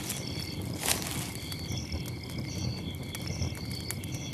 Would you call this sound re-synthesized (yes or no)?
no